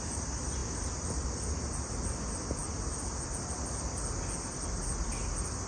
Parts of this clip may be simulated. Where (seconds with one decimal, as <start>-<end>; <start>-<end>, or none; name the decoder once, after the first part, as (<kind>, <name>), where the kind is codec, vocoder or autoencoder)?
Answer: none